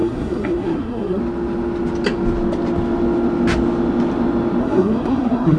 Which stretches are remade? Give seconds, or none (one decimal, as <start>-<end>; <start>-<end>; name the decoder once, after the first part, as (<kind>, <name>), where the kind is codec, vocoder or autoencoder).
0.0-1.2 (codec, SNAC); 4.6-5.6

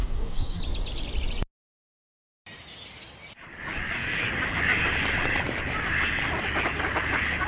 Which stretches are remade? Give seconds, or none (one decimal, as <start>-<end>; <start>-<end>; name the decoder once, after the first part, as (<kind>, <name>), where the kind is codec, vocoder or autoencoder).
0.0-0.6 (codec, DAC)

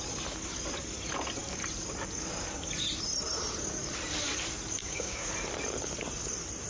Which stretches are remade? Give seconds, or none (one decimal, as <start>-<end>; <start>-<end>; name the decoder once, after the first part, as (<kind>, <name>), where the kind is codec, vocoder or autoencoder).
4.8-5.3 (codec, DAC)